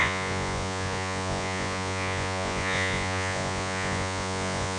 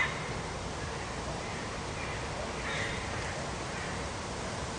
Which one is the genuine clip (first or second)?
second